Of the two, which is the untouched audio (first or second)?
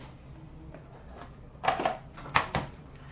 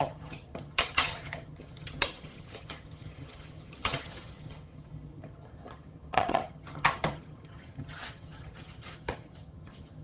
first